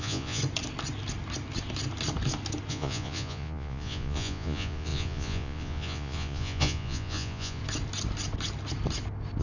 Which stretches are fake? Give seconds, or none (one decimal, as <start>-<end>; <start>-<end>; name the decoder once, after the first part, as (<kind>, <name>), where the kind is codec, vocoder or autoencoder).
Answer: 0.0-0.4 (vocoder, Vocos); 2.7-7.6